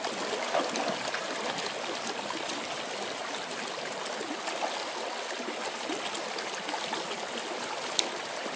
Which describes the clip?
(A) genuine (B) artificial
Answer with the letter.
A